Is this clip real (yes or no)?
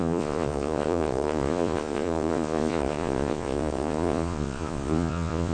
no